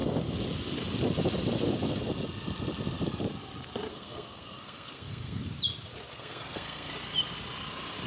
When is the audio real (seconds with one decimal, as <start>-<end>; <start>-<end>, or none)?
0.0-3.9; 5.4-6.1; 6.9-8.1